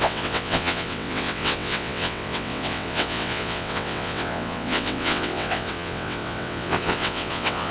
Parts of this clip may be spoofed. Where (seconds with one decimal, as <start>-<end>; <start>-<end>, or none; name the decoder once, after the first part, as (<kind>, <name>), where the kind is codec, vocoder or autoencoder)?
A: 0.0-7.7 (vocoder, WaveNeXt)